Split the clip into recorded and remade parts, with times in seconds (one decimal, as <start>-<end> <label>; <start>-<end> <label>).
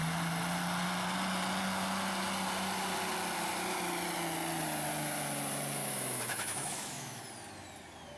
0.0-5.8 recorded; 5.8-7.2 remade; 7.2-8.2 recorded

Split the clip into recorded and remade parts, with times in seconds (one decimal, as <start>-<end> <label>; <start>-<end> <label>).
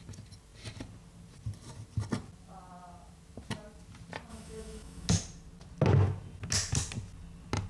0.0-4.3 recorded; 4.3-5.1 remade; 5.1-7.7 recorded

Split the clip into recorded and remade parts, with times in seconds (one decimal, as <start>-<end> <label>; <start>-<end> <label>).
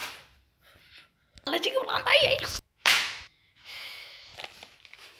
0.0-2.4 recorded; 2.4-4.3 remade; 4.3-4.8 recorded; 4.8-5.2 remade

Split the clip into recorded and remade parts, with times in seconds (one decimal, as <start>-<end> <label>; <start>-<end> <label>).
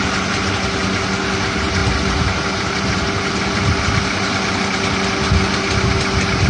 0.0-6.5 recorded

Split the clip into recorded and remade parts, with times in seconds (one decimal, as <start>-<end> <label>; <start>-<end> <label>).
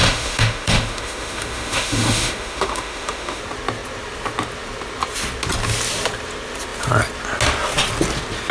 0.0-3.4 remade; 3.4-8.5 recorded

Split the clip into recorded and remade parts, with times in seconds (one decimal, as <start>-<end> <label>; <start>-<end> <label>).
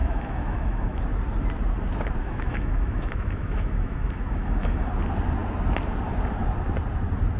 0.0-1.0 remade; 1.0-2.2 recorded; 2.2-4.9 remade; 4.9-7.4 recorded